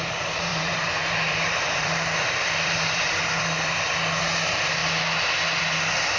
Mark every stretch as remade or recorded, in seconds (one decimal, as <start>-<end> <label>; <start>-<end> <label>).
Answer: 0.0-4.8 remade; 4.8-5.6 recorded; 5.6-6.2 remade